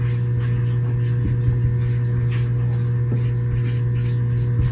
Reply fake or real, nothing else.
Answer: real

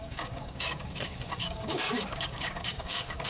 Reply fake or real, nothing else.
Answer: fake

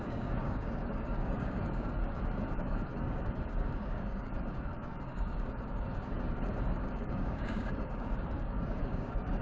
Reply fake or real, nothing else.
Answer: fake